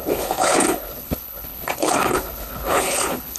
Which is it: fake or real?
fake